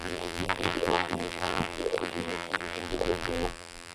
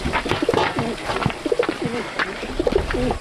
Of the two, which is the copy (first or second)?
first